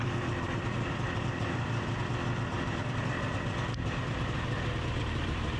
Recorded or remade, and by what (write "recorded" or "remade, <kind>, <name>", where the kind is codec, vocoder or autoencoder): remade, vocoder, BigVGAN v2